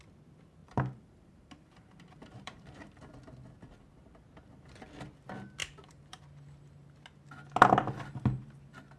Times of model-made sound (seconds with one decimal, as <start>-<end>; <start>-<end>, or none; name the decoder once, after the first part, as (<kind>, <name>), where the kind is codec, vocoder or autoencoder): 0.6-3.1 (vocoder, BigVGAN v2); 5.6-6.2